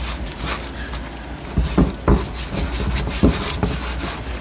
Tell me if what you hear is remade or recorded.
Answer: recorded